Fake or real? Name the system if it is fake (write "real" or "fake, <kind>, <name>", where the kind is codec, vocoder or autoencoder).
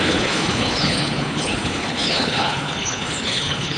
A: fake, codec, HILCodec